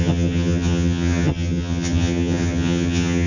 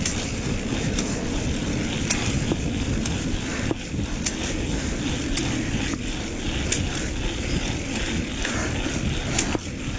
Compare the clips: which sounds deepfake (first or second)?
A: first